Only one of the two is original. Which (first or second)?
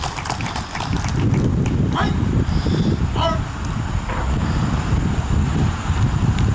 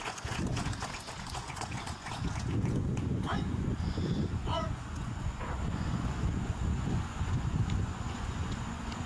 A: first